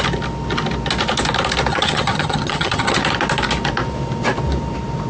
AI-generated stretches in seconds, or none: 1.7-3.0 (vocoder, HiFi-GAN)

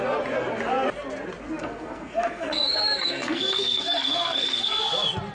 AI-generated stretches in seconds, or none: 1.6-4.8 (codec, SNAC)

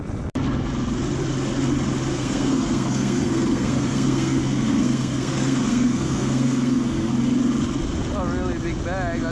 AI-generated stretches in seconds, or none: 2.1-7.1 (codec, SNAC)

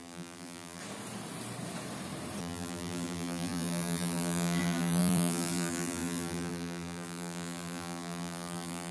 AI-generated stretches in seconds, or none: 0.0-0.8 (vocoder, BigVGAN v2); 2.4-8.9

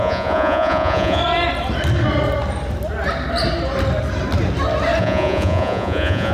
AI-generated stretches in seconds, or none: 0.0-1.2 (vocoder, Vocos); 5.0-6.3

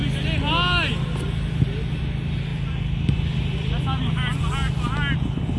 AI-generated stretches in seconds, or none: none